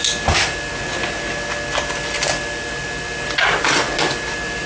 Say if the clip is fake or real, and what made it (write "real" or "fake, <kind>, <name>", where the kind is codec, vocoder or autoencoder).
real